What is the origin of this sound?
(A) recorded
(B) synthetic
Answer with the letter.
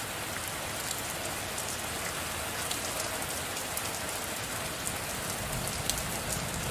A